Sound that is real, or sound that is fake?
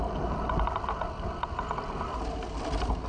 real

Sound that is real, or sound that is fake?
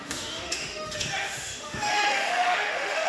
fake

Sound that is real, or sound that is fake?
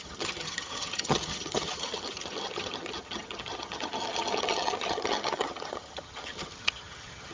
fake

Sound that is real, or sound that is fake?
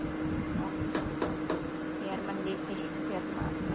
real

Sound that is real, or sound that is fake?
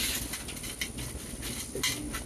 real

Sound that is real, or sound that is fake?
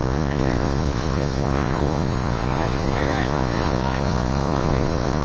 fake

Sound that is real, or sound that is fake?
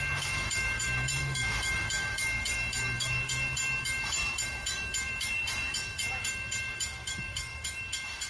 fake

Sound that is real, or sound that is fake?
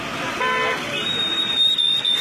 fake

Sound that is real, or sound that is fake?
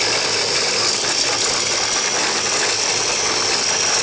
real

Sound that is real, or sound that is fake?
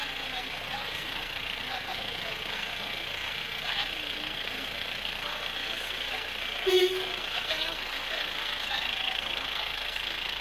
fake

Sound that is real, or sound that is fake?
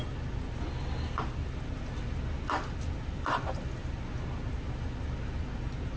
real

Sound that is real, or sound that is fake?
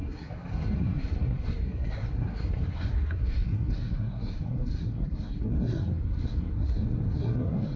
fake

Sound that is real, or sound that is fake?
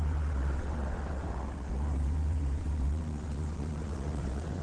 fake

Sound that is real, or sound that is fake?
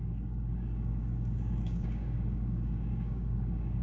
fake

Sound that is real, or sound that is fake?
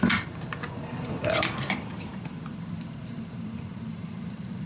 fake